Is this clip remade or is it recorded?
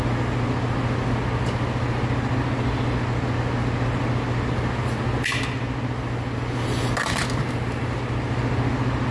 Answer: recorded